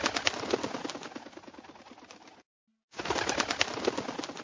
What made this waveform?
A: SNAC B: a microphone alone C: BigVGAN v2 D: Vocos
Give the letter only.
B